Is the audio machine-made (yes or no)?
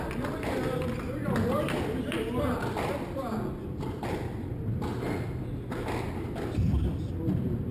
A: no